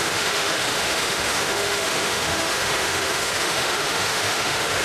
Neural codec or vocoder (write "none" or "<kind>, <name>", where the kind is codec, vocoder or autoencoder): autoencoder, DAC-VAE